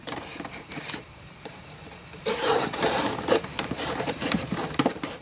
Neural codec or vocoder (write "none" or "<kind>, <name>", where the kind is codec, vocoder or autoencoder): vocoder, BigVGAN v2